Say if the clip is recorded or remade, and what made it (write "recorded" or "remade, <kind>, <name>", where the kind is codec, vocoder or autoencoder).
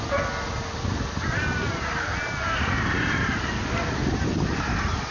recorded